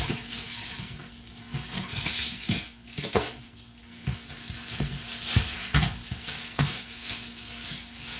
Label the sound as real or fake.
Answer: fake